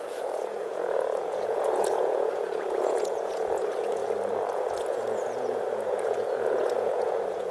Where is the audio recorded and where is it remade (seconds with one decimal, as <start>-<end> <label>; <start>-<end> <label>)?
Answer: 0.0-4.0 remade; 4.0-4.5 recorded; 4.5-7.5 remade